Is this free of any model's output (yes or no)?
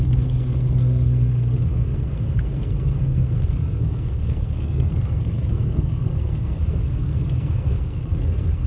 no